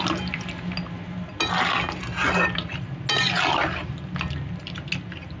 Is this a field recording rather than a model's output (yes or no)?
yes